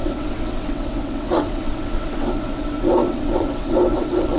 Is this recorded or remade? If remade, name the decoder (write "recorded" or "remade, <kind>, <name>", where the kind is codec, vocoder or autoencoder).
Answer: remade, vocoder, WaveNeXt